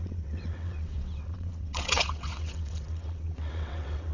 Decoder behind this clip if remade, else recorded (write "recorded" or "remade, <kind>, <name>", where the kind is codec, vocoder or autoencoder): remade, vocoder, WaveNeXt